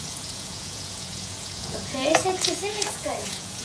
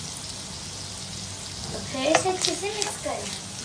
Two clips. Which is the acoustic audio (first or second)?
second